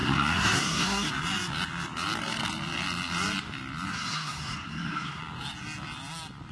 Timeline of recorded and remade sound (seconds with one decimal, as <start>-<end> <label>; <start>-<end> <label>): 0.0-1.1 remade; 1.1-3.9 recorded; 3.9-5.2 remade; 5.2-6.5 recorded

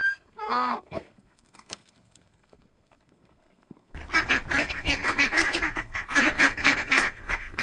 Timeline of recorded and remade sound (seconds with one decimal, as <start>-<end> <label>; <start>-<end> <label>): 0.0-4.0 remade; 4.0-4.6 recorded; 4.6-7.6 remade

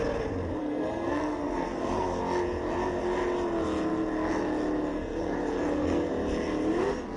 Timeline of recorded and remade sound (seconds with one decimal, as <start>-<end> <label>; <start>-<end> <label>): 0.0-0.6 recorded; 0.6-2.2 remade; 2.2-4.9 recorded; 4.9-6.1 remade; 6.1-7.2 recorded

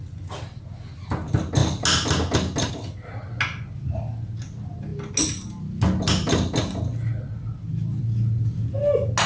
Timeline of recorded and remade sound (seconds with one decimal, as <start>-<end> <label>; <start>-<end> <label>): 0.0-9.3 recorded

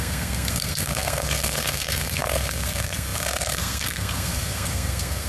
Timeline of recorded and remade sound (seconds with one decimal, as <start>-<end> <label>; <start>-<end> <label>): 0.0-5.3 remade

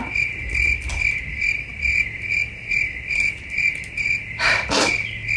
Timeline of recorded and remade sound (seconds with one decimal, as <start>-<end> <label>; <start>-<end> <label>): 0.0-5.4 recorded

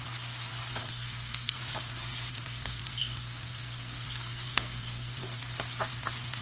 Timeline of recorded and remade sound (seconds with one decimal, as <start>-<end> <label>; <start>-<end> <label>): 0.0-0.8 recorded; 0.8-1.6 remade; 1.6-2.3 recorded; 2.3-5.4 remade; 5.4-6.4 recorded

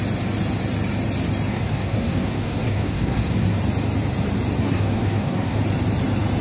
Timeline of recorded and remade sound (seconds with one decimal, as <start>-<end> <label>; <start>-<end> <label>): 0.0-1.5 recorded; 1.5-3.6 remade; 3.6-4.6 recorded; 4.6-5.6 remade; 5.6-6.4 recorded